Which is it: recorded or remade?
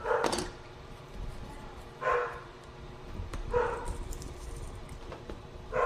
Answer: remade